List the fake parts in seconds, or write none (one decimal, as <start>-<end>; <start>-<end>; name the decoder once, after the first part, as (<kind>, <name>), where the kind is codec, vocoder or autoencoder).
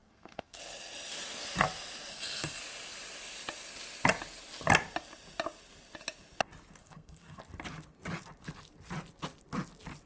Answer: 0.0-0.6 (codec, SNAC); 2.1-2.6; 6.8-7.4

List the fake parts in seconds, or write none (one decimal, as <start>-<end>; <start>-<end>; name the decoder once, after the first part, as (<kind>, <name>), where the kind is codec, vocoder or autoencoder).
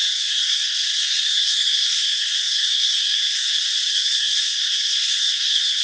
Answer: 0.0-3.5 (codec, SNAC); 3.9-5.8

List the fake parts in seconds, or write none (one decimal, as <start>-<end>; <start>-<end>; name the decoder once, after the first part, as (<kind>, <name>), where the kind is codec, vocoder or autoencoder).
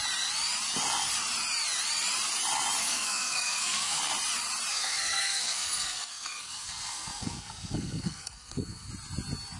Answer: 2.8-4.0 (codec, SNAC); 4.7-8.9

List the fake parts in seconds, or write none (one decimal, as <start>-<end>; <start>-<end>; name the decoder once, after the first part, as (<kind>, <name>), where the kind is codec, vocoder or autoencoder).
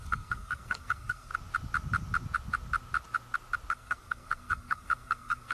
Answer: 0.0-1.3 (codec, SNAC); 3.7-5.5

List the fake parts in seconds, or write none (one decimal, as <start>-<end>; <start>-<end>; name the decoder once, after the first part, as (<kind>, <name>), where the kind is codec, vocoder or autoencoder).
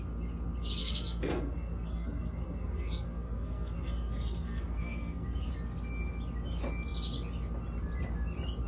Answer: 0.8-5.5 (codec, SNAC)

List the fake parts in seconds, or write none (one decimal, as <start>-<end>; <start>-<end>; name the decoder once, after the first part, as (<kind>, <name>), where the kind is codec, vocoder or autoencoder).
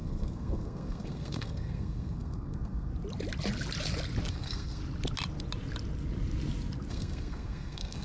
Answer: 0.0-2.9 (codec, SNAC); 4.3-4.8; 6.9-8.0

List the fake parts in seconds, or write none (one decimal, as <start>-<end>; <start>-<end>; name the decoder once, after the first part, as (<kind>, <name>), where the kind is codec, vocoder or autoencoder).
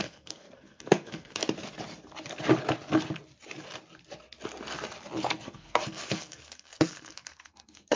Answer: 0.0-1.4 (codec, SNAC); 5.2-8.0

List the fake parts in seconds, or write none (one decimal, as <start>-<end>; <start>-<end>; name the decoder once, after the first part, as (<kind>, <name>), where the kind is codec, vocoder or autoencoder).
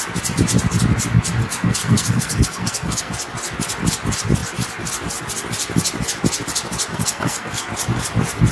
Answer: 1.4-3.1 (codec, SNAC); 6.9-7.7